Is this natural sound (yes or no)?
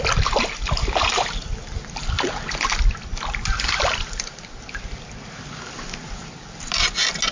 yes